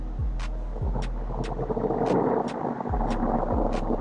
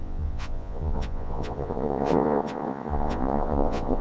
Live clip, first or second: first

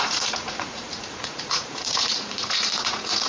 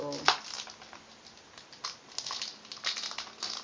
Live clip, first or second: second